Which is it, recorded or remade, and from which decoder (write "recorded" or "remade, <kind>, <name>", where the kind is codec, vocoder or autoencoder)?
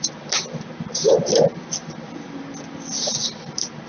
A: remade, vocoder, BigVGAN v2